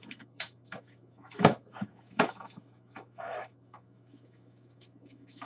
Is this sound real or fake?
fake